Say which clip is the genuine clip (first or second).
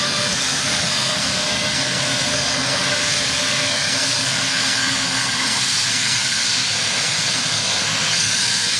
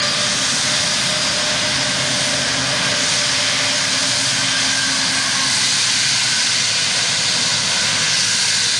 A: second